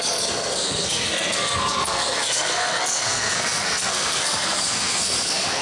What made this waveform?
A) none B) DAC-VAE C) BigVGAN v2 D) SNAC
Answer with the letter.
D